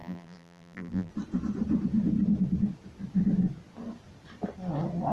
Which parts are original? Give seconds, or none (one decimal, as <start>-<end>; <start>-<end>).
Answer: 1.1-5.1